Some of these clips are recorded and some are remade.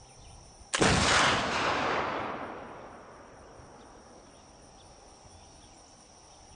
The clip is recorded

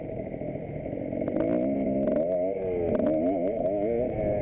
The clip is recorded